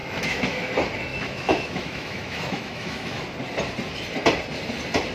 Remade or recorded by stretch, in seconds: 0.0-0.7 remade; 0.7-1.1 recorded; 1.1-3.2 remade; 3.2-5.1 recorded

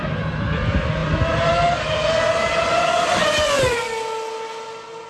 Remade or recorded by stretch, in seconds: 0.0-3.2 recorded; 3.2-3.8 remade; 3.8-5.1 recorded

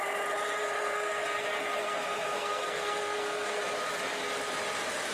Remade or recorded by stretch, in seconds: 0.0-0.6 recorded; 0.6-3.6 remade; 3.6-5.1 recorded